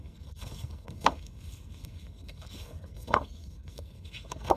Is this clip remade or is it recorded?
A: remade